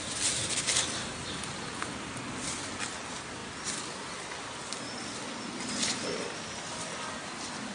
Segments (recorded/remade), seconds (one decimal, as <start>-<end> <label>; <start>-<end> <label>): 0.0-7.7 recorded